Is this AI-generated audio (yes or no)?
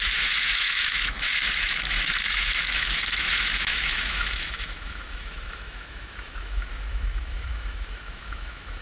yes